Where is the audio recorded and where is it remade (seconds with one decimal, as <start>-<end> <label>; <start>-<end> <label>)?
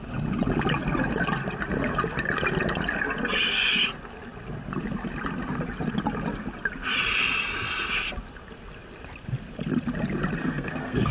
0.0-10.4 recorded; 10.4-11.1 remade